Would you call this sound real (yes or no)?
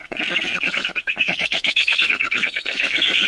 no